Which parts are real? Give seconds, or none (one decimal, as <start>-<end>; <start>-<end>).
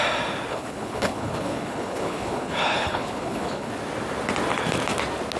0.0-0.5; 3.7-5.4